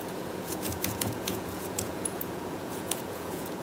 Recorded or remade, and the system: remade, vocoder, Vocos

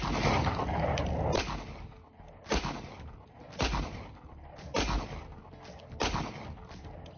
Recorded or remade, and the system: recorded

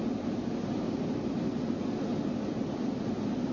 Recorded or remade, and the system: recorded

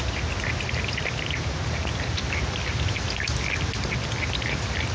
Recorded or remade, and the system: recorded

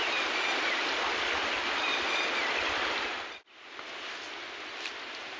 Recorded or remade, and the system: remade, vocoder, BigVGAN v2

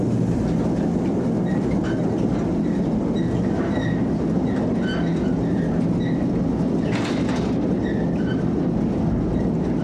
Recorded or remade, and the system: recorded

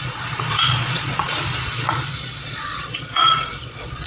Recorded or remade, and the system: remade, vocoder, Vocos